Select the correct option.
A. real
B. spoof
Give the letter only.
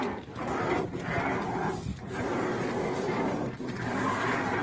A